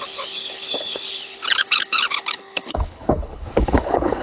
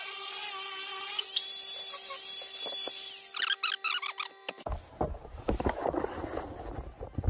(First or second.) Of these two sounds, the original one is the second